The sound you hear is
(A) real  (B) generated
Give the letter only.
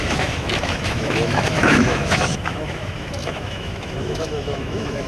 B